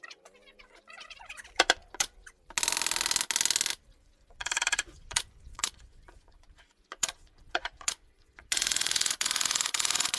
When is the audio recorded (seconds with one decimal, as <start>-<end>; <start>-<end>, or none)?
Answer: 2.2-4.0